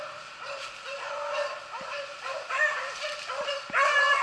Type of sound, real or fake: real